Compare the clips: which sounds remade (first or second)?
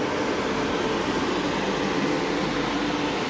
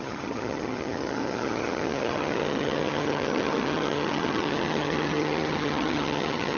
second